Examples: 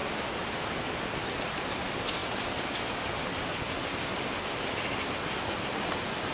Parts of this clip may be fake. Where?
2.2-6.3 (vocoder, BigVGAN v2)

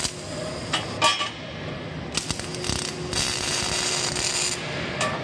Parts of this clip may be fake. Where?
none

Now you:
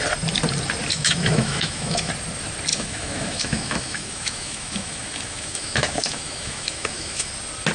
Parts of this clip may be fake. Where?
0.9-2.1 (autoencoder, DAC-VAE); 2.7-7.3

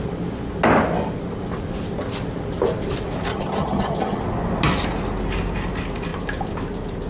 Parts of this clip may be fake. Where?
3.3-4.2 (vocoder, HiFi-GAN)